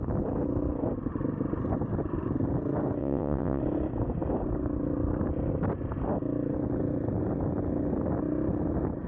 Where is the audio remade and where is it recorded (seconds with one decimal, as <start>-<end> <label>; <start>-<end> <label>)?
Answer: 0.0-3.0 recorded; 3.0-3.6 remade; 3.6-9.1 recorded